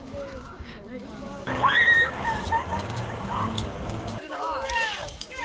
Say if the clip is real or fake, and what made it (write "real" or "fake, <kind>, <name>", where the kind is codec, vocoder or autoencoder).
fake, codec, DAC